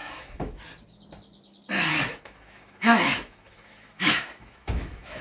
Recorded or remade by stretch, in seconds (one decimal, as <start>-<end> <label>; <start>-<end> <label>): 0.0-0.6 remade; 0.6-1.9 recorded; 1.9-5.2 remade